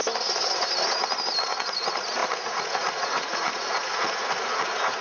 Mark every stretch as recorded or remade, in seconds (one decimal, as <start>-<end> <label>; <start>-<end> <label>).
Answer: 0.0-1.4 recorded; 1.4-5.0 remade